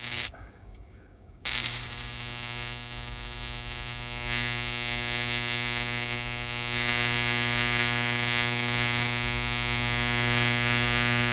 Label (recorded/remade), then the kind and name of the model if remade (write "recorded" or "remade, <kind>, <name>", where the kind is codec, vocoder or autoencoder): remade, codec, DAC